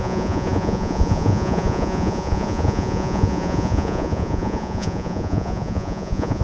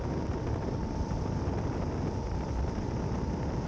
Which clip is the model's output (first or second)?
first